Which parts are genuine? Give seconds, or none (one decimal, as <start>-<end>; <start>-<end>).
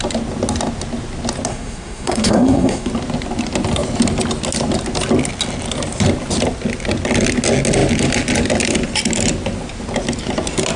0.0-1.5; 2.9-10.8